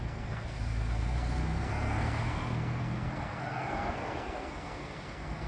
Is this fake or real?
fake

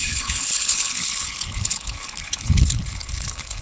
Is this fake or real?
fake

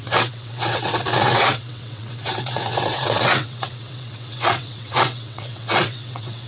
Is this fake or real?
fake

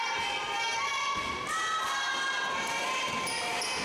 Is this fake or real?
real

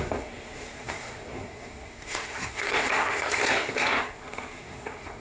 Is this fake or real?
fake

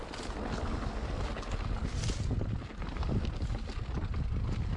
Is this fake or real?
real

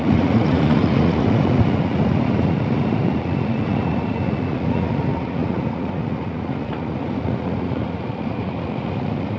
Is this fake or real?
fake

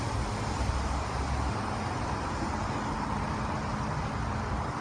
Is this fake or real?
real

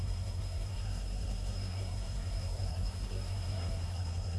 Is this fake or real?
fake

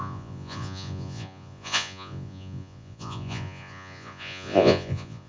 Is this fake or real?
fake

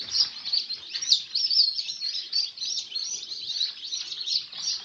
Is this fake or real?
real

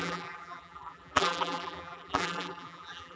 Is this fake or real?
fake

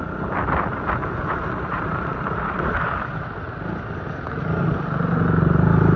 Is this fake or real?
real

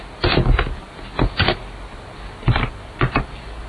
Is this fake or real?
real